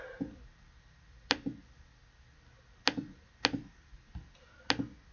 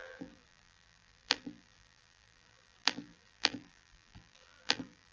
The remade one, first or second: second